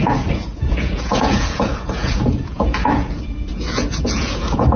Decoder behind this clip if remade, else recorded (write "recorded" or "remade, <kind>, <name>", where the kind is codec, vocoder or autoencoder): remade, vocoder, Vocos